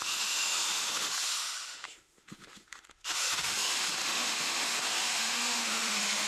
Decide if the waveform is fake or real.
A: fake